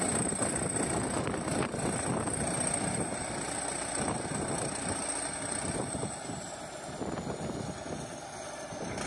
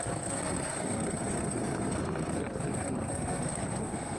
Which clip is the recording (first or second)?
first